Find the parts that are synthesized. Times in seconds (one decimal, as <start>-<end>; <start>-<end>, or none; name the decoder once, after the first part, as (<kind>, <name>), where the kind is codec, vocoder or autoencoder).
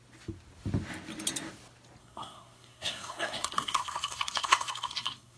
2.0-5.4 (codec, SNAC)